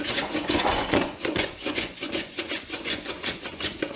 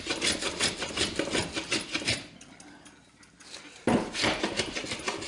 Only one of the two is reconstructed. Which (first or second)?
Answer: first